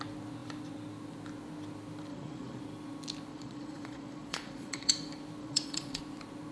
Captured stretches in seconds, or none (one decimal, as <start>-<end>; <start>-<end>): 0.0-2.1; 2.6-3.3; 4.9-5.4; 6.0-6.5